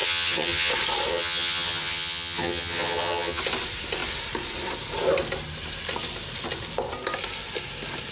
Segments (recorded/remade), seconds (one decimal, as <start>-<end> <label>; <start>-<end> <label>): 0.0-0.7 remade; 0.7-1.1 recorded; 1.1-3.4 remade; 3.4-8.1 recorded